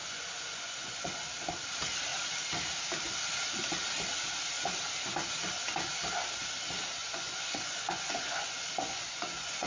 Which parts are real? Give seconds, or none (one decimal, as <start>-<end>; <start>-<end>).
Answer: 1.1-7.0